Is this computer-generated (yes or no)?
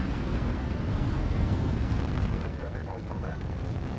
yes